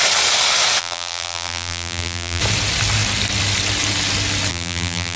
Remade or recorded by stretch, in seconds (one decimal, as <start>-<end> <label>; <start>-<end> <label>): 0.0-0.8 recorded; 0.8-2.4 remade; 2.4-4.5 recorded; 4.5-5.2 remade